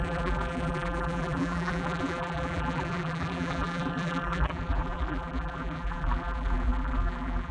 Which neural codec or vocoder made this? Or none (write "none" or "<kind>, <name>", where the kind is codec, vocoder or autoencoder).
vocoder, BigVGAN v2